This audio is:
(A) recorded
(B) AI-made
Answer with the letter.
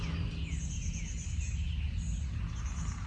A